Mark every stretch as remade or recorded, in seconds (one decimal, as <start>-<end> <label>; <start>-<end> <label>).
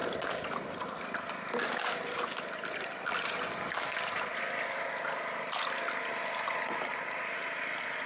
0.0-8.1 recorded